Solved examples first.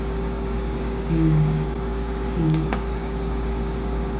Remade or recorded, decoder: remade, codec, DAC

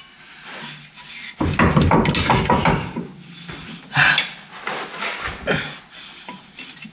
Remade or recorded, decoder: recorded